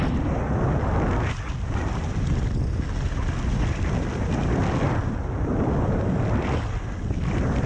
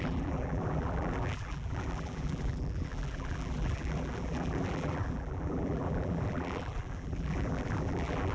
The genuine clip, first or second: first